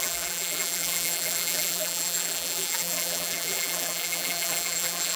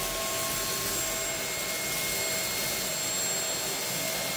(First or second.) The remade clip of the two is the first